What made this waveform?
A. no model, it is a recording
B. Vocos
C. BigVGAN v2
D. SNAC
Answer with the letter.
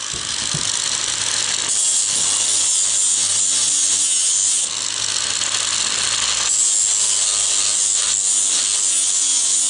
A